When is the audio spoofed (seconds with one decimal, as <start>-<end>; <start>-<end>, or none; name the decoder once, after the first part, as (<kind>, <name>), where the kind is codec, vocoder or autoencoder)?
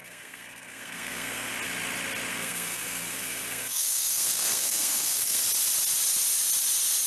0.0-1.5 (codec, SNAC); 2.3-5.4